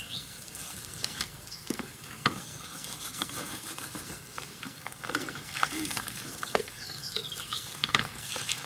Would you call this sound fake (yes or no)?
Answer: yes